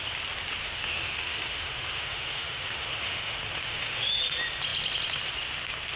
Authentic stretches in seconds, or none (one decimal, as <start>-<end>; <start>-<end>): 0.0-0.6; 4.2-6.0